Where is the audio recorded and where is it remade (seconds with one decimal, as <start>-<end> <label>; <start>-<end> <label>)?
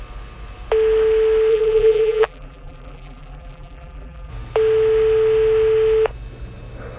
0.0-1.5 recorded; 1.5-4.3 remade; 4.3-7.0 recorded